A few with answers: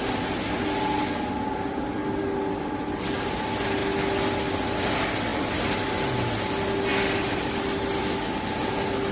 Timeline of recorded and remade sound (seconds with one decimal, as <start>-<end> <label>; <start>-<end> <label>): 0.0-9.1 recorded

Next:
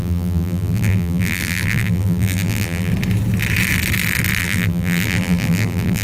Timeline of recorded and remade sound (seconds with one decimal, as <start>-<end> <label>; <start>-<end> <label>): 0.0-2.9 remade; 2.9-4.4 recorded; 4.4-6.0 remade

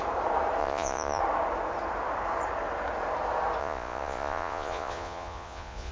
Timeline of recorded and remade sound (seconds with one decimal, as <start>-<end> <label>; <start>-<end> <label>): 0.0-0.6 recorded; 0.6-1.2 remade; 1.2-3.6 recorded; 3.6-5.9 remade

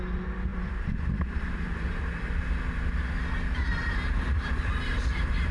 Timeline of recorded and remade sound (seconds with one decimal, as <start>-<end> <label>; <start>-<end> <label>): 0.0-0.5 recorded; 0.5-1.9 remade; 1.9-3.7 recorded; 3.7-4.7 remade; 4.7-5.5 recorded

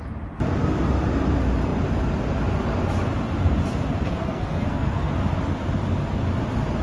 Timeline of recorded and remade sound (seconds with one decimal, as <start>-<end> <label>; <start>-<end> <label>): 0.0-4.2 recorded; 4.2-5.1 remade; 5.1-6.8 recorded

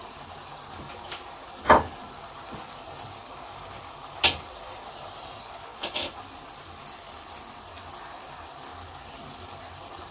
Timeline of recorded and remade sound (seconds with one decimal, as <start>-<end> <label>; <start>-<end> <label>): 0.0-5.7 recorded; 5.7-7.7 remade; 7.7-10.1 recorded

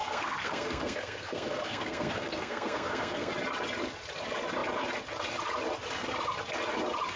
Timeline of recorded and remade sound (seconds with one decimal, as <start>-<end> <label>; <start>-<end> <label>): 0.0-3.3 remade; 3.3-7.2 recorded

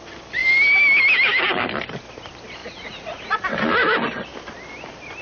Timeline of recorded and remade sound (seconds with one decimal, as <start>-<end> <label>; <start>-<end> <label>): 0.0-2.6 recorded; 2.6-3.4 remade; 3.4-5.2 recorded